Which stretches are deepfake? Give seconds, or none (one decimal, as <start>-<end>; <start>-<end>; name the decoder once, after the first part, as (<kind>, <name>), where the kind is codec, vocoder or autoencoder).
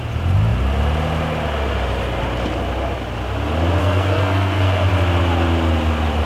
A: 3.8-4.9 (codec, SNAC)